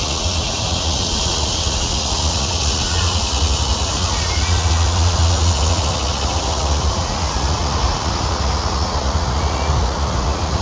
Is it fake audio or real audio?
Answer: fake